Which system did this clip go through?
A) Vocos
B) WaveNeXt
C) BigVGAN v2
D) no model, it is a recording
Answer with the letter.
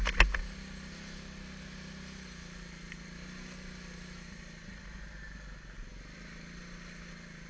D